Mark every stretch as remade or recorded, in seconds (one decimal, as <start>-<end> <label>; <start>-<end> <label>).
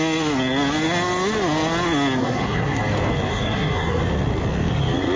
0.0-2.2 recorded; 2.2-2.8 remade; 2.8-3.3 recorded; 3.3-4.0 remade; 4.0-5.2 recorded